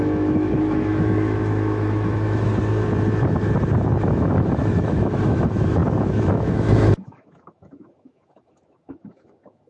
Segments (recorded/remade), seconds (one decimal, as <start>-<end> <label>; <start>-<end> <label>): 0.0-2.5 remade; 2.5-4.0 recorded; 4.0-9.7 remade